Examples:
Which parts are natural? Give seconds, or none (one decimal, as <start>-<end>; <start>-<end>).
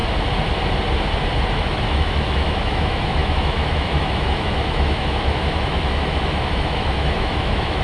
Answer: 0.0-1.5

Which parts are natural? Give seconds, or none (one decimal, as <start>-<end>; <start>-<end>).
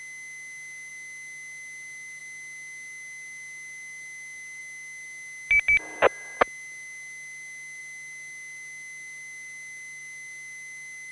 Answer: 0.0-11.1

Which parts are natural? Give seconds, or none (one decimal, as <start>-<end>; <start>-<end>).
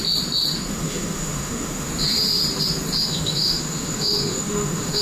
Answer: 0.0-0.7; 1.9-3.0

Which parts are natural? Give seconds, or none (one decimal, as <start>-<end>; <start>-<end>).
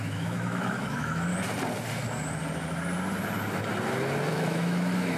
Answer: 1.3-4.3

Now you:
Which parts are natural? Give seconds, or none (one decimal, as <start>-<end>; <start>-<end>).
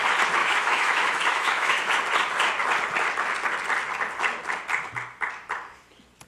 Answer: 0.0-0.4; 1.9-6.3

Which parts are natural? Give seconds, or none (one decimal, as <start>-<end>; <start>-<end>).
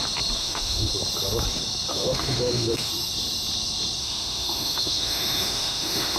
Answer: 0.0-0.4; 0.9-1.9; 2.9-4.0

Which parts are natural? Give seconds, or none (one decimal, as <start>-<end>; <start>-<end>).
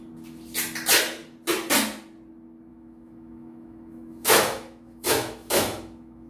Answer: 0.0-2.7